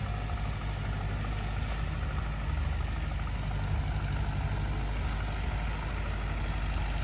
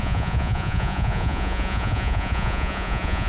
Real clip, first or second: first